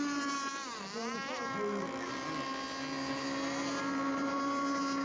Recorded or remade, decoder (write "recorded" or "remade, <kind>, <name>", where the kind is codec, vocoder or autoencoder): recorded